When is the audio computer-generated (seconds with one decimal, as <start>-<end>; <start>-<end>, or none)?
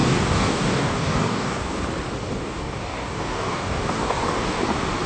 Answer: 0.0-1.8; 2.2-4.6